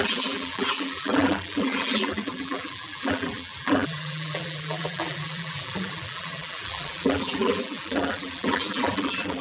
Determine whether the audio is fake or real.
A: fake